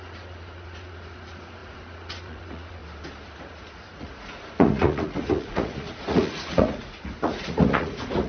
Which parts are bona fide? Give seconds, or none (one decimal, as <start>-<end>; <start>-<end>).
2.8-3.4